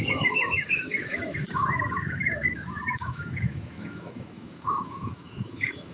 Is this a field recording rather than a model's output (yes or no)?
no